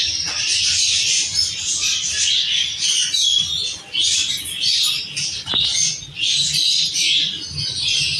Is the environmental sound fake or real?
real